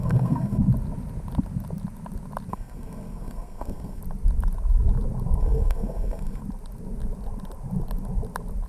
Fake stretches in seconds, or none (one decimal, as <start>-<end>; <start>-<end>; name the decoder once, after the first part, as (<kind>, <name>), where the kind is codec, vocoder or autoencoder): 0.0-0.6 (codec, SNAC); 2.5-4.0; 5.4-6.4